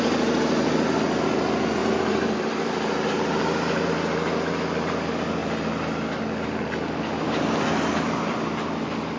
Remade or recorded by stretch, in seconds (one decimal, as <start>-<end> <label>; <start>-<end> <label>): 0.0-1.8 recorded; 1.8-3.9 remade; 3.9-9.2 recorded